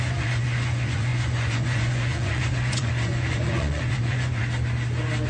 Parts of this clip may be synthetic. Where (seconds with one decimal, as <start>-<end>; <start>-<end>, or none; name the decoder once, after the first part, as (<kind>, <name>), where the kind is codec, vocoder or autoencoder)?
0.0-4.4 (vocoder, Vocos)